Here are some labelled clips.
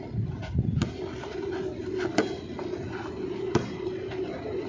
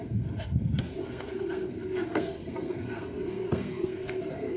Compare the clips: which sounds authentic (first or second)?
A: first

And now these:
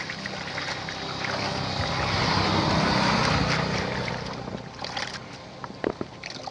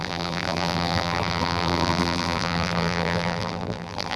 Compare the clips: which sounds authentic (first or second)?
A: first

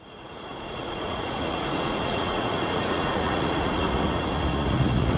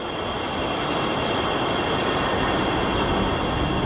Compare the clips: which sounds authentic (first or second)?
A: second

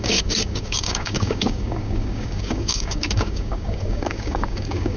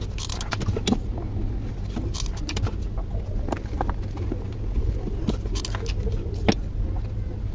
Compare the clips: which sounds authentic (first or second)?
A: second